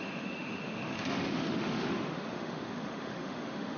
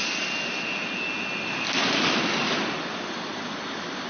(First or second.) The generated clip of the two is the first